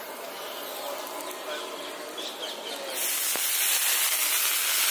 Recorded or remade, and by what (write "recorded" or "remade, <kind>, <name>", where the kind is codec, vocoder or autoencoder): recorded